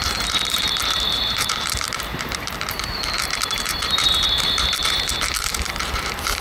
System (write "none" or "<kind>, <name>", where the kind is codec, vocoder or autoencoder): vocoder, BigVGAN v2